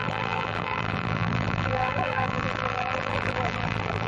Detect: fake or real fake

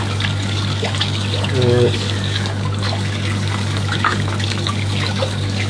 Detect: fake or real fake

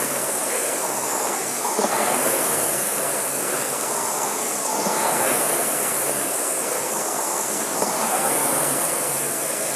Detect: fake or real fake